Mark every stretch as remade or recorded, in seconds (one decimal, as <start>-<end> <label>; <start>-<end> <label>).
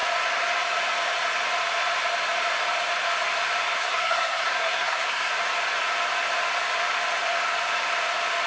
0.0-3.8 recorded; 3.8-5.3 remade; 5.3-8.5 recorded